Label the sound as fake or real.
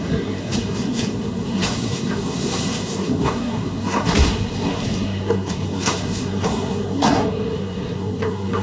fake